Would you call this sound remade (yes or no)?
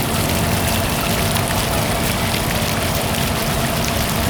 yes